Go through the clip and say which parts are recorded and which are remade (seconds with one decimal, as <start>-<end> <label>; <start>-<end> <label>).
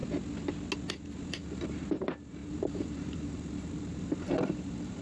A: 0.0-1.2 recorded; 1.2-5.0 remade